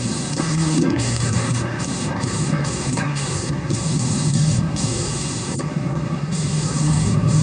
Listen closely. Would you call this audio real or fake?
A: fake